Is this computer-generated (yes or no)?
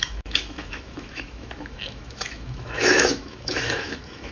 yes